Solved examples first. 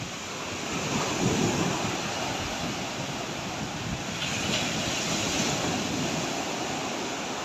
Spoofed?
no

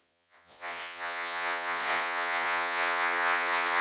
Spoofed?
yes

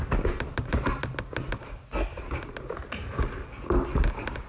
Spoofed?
no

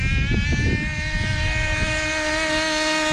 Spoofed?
no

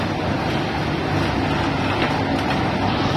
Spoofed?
no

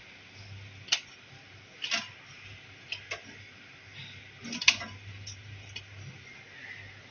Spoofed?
no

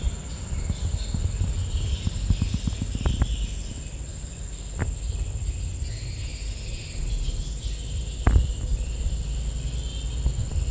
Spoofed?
no